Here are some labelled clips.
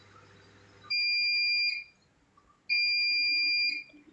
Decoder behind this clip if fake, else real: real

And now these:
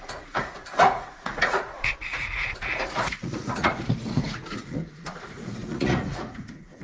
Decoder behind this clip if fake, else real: fake, vocoder, Vocos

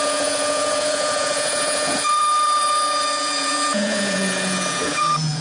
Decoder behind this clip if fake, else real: fake, vocoder, Vocos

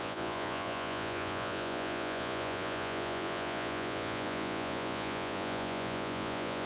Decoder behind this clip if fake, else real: fake, vocoder, Vocos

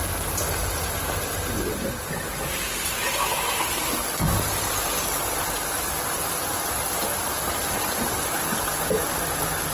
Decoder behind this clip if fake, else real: real